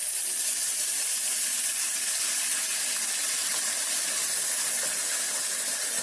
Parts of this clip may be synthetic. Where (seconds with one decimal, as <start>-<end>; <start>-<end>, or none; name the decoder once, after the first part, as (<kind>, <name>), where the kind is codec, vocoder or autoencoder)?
none